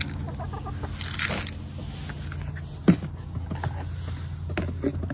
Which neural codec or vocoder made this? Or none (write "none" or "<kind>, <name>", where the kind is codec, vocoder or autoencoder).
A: none